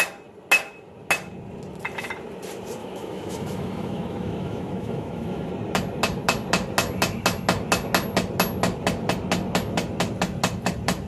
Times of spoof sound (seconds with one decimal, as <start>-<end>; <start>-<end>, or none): 2.8-5.5